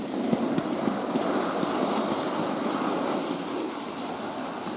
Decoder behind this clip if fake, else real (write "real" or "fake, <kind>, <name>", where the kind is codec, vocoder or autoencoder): real